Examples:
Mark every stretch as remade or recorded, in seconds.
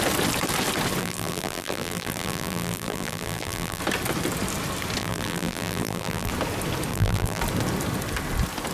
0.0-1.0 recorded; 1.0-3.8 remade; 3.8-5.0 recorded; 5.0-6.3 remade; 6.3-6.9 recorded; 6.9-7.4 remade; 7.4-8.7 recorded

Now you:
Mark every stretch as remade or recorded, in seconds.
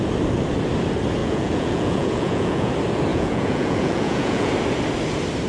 0.0-1.2 recorded; 1.2-2.7 remade; 2.7-3.1 recorded; 3.1-4.5 remade; 4.5-5.5 recorded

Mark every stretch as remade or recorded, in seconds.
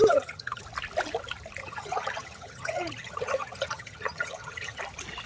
0.0-0.6 remade; 0.6-1.6 recorded; 1.6-4.8 remade; 4.8-5.3 recorded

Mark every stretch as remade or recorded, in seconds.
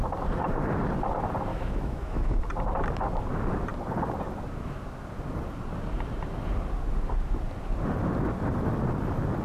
0.0-1.5 recorded; 1.5-2.4 remade; 2.4-9.4 recorded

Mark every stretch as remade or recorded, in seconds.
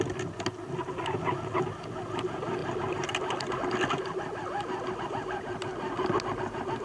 0.0-6.8 recorded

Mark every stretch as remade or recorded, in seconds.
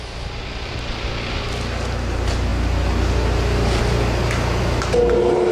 0.0-5.5 recorded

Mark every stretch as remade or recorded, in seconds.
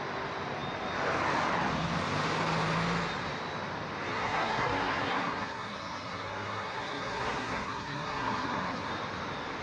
0.0-4.1 recorded; 4.1-8.9 remade; 8.9-9.6 recorded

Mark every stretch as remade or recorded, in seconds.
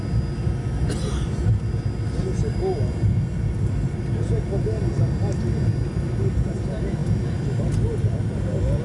0.0-8.8 recorded